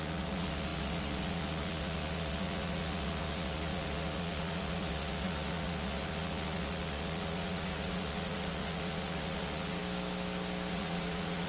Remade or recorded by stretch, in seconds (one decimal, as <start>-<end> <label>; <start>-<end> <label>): 0.0-9.8 remade; 9.8-10.7 recorded; 10.7-11.5 remade